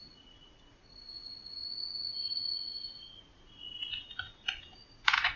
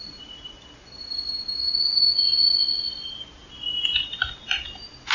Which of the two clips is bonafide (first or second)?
second